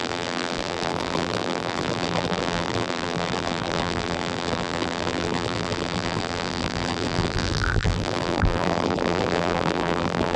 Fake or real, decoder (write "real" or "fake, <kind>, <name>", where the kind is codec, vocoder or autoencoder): fake, vocoder, BigVGAN v2